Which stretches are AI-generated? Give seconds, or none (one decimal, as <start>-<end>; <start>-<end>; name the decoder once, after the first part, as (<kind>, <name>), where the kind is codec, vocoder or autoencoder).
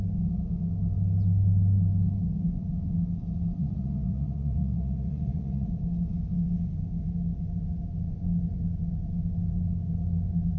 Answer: 3.6-5.7 (vocoder, Vocos)